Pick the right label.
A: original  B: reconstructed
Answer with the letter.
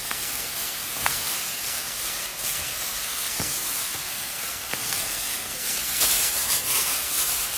B